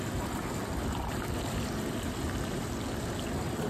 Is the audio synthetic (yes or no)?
no